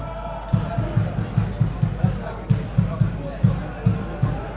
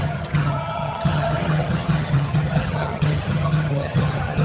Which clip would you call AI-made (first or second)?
second